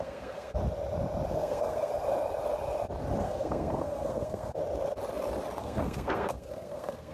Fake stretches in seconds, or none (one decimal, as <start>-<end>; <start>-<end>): 0.0-0.6; 1.3-1.9; 3.2-4.6; 5.6-7.1